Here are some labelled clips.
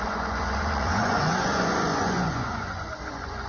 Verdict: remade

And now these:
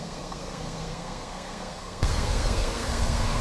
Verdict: remade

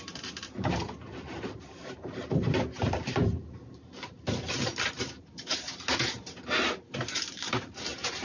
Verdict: remade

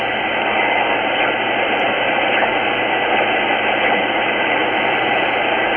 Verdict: recorded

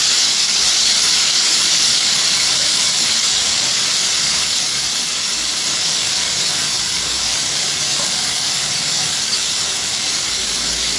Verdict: remade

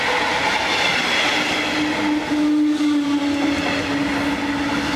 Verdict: recorded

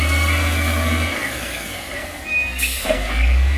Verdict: remade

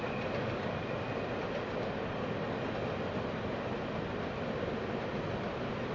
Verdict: recorded